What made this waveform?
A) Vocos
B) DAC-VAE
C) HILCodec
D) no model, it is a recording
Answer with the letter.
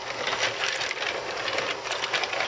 D